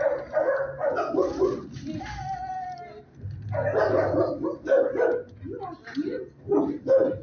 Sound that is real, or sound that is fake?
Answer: real